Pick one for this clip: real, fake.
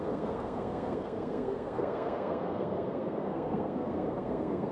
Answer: fake